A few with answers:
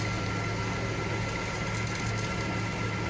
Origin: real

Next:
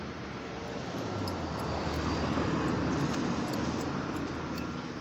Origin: real